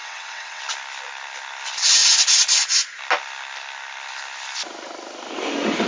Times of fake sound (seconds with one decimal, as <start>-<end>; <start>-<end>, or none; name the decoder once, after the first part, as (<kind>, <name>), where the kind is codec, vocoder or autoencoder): 0.0-0.6 (vocoder, WaveNeXt)

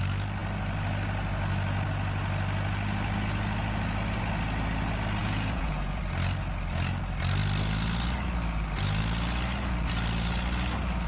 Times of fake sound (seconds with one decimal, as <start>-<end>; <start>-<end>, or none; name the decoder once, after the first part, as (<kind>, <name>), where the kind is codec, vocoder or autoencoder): 5.2-6.0 (vocoder, Vocos)

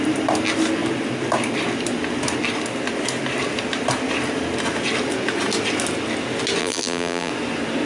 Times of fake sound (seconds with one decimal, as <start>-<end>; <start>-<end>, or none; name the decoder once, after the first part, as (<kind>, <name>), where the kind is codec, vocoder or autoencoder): 6.6-7.3 (vocoder, BigVGAN v2)

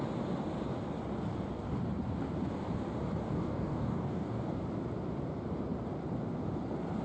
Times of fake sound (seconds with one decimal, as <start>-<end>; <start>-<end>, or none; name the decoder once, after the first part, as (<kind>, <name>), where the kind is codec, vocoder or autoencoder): 3.2-4.6 (codec, DAC)